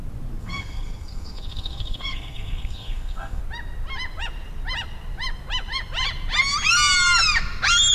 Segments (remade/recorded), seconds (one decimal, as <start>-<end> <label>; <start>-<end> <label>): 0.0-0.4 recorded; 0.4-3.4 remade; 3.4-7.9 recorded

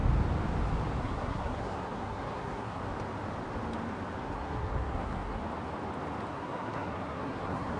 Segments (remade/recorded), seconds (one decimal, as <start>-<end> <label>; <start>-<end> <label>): 0.0-1.0 recorded; 1.0-2.8 remade; 2.8-4.2 recorded; 4.2-5.4 remade; 5.4-6.3 recorded; 6.3-7.8 remade

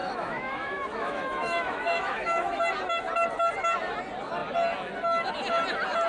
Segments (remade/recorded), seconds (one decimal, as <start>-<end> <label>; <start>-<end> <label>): 0.0-2.6 remade; 2.6-6.1 recorded

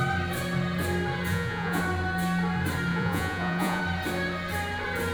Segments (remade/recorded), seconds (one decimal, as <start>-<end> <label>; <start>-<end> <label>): 0.0-1.3 recorded; 1.3-1.8 remade; 1.8-2.9 recorded; 2.9-3.8 remade; 3.8-5.1 recorded

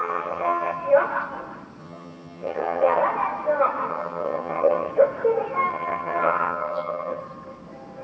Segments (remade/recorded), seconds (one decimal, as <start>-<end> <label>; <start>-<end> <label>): 0.0-0.8 remade; 0.8-1.8 recorded; 1.8-3.0 remade; 3.0-3.9 recorded; 3.9-4.9 remade; 4.9-5.7 recorded; 5.7-7.2 remade; 7.2-8.0 recorded

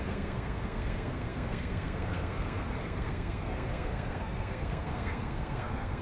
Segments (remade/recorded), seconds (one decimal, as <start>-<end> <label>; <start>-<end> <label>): 0.0-6.0 remade

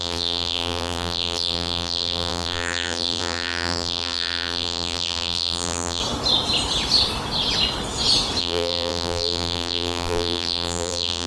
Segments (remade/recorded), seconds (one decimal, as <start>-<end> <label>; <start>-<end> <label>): 0.0-6.0 remade; 6.0-8.4 recorded; 8.4-11.3 remade

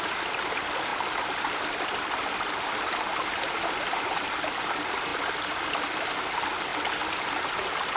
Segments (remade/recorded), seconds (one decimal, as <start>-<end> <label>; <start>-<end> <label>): 0.0-8.0 recorded